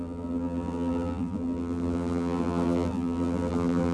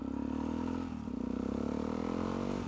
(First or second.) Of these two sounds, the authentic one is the second